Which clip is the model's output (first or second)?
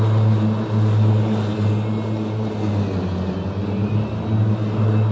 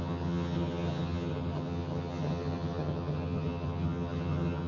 second